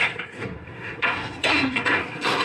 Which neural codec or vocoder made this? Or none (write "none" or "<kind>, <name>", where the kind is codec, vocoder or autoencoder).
codec, SNAC